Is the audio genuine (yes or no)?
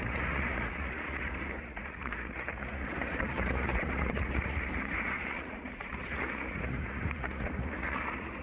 no